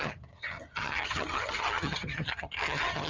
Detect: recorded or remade remade